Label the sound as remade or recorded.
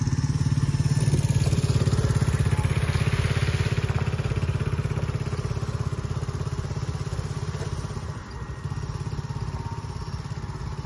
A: recorded